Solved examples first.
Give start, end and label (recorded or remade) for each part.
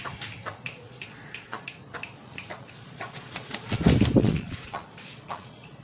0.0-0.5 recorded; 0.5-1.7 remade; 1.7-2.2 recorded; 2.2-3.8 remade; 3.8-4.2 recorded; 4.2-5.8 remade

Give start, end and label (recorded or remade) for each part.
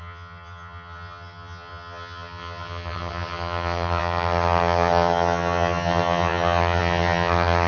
0.0-7.7 remade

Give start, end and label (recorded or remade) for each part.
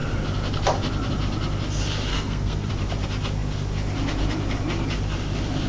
0.0-2.1 recorded; 2.1-2.7 remade; 2.7-5.7 recorded